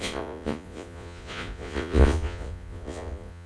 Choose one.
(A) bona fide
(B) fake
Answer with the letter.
B